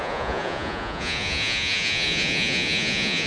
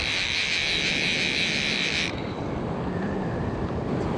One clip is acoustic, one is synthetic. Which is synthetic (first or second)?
first